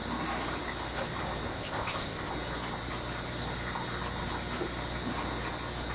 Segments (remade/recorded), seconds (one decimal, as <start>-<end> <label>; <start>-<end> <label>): 0.0-1.5 recorded; 1.5-2.3 remade; 2.3-5.9 recorded